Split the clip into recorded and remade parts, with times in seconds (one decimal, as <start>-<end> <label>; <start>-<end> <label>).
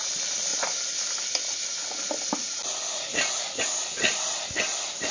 0.0-5.1 recorded